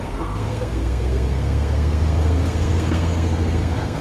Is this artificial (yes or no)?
yes